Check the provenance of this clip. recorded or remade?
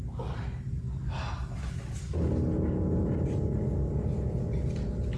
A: recorded